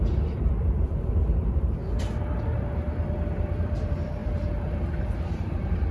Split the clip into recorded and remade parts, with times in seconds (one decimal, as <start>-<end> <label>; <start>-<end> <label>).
0.0-1.8 remade; 1.8-2.4 recorded; 2.4-5.9 remade